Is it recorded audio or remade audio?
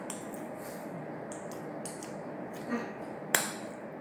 recorded